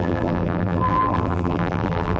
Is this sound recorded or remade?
remade